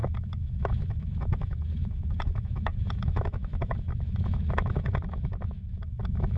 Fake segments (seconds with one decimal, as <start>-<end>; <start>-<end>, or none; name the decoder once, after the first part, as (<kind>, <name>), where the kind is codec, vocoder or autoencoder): 0.0-6.4 (autoencoder, DAC-VAE)